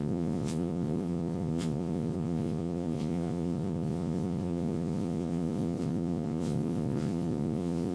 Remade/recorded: remade